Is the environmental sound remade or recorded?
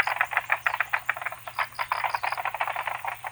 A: recorded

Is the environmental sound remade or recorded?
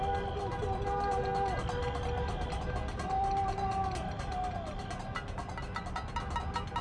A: recorded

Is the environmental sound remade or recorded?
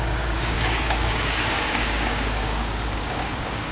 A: remade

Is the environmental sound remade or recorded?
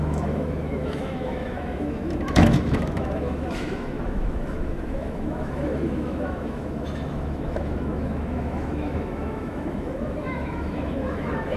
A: remade